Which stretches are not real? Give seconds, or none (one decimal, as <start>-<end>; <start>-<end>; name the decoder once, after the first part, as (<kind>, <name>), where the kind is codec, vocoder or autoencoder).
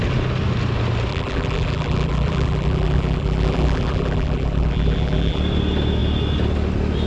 1.1-5.4 (vocoder, BigVGAN v2)